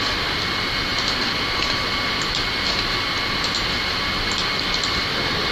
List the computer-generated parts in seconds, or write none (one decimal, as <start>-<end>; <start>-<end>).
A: none